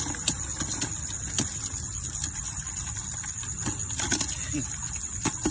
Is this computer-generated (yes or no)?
no